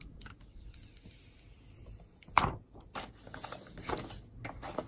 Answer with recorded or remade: recorded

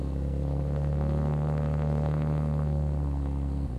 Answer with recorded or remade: remade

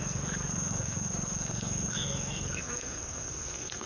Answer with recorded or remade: remade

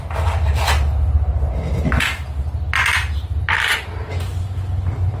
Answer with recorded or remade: recorded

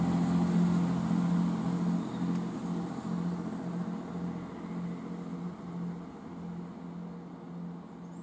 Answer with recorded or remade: recorded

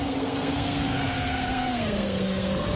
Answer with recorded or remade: remade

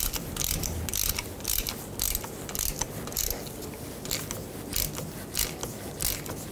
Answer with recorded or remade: recorded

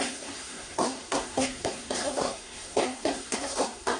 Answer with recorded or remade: remade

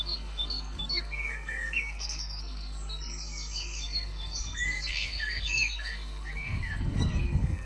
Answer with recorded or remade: remade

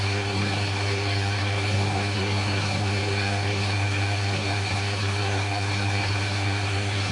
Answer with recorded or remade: remade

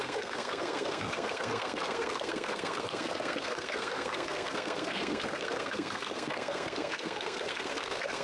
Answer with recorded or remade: remade